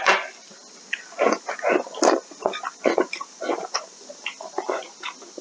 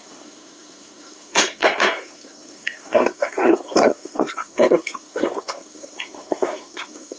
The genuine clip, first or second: first